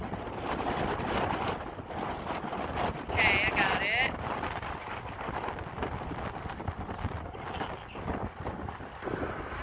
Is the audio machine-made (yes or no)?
no